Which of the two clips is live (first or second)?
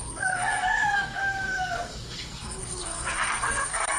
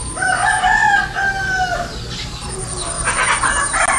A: second